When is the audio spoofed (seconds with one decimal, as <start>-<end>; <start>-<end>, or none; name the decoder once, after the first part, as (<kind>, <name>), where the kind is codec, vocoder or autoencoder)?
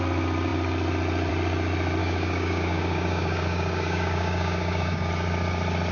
2.0-5.1 (codec, DAC)